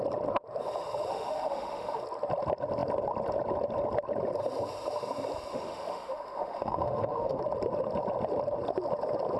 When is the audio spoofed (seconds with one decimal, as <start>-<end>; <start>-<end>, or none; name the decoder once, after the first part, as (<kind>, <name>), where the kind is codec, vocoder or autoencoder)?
1.1-2.0 (autoencoder, DAC-VAE); 5.5-7.4